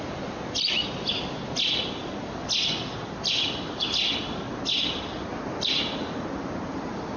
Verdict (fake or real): real